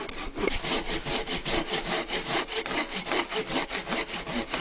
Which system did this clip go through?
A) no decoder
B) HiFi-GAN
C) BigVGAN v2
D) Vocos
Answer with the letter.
C